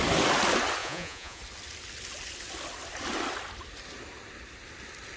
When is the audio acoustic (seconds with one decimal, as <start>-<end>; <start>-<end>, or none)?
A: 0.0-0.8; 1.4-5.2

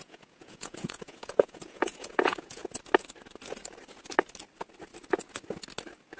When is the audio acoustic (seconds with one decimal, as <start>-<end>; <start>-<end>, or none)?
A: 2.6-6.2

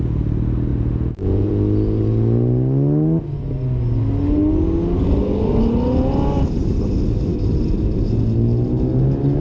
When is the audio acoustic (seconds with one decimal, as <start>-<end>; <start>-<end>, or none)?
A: 0.0-0.7; 1.5-9.4

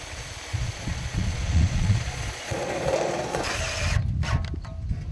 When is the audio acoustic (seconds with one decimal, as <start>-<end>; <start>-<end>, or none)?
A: 0.0-0.5; 3.6-5.1

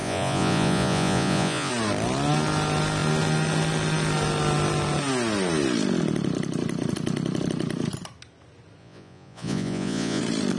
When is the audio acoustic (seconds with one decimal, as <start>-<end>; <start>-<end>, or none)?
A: 1.7-8.8; 10.2-10.6